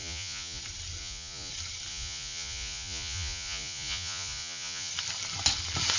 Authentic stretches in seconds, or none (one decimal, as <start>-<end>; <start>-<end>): 0.6-1.0; 1.5-1.9; 4.9-6.0